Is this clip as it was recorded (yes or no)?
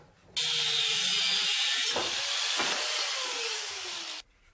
yes